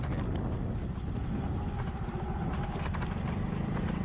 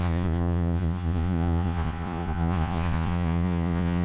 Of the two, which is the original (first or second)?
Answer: first